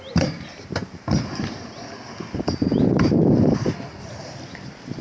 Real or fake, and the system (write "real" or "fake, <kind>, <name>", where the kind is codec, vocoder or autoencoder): fake, vocoder, BigVGAN v2